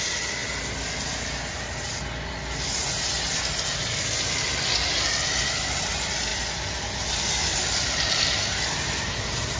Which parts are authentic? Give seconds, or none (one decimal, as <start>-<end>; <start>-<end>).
0.0-9.6